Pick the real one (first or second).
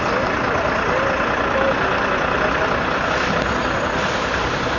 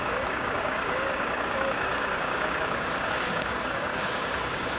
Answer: first